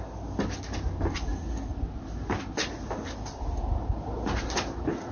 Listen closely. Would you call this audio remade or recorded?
recorded